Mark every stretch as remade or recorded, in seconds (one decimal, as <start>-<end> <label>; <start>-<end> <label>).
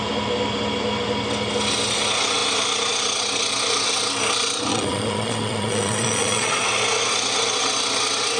0.0-4.7 recorded; 4.7-6.6 remade; 6.6-8.4 recorded